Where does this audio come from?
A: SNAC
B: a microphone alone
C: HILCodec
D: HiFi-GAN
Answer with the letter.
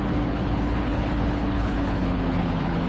C